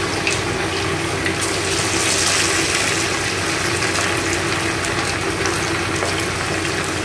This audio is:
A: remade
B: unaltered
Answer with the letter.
B